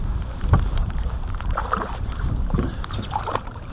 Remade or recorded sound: remade